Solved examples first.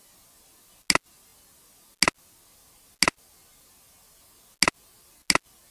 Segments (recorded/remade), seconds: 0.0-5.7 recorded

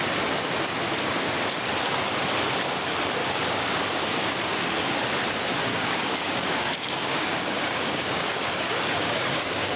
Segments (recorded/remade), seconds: 0.0-3.2 recorded; 3.2-3.8 remade; 3.8-5.7 recorded; 5.7-9.8 remade

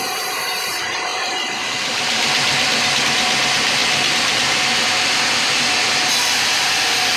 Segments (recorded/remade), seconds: 0.0-1.1 recorded; 1.1-3.0 remade; 3.0-3.8 recorded; 3.8-4.8 remade; 4.8-7.2 recorded

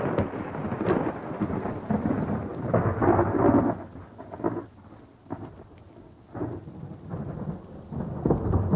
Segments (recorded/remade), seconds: 0.0-8.8 recorded